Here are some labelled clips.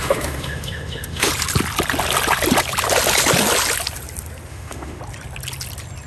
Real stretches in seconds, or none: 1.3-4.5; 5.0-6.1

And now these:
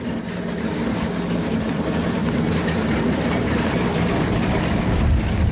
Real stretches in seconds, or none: 0.0-1.5; 4.8-5.5